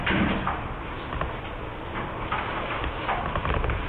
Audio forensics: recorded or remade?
recorded